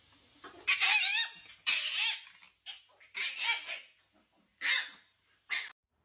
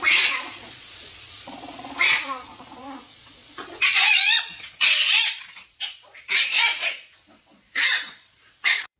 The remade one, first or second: second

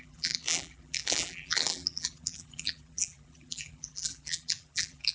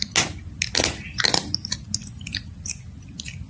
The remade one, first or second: first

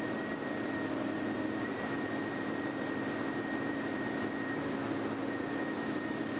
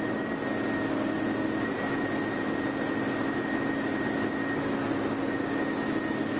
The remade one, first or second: first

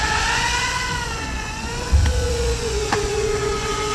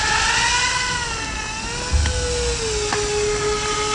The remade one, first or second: first